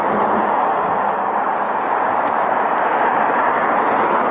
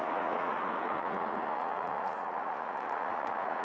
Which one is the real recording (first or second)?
first